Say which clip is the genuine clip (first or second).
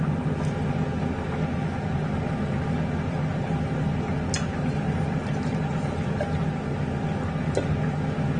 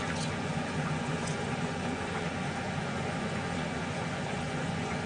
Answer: first